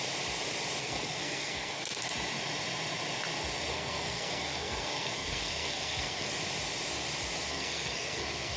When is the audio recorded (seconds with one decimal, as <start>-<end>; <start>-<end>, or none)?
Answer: 0.0-0.8; 2.0-3.7; 6.3-7.5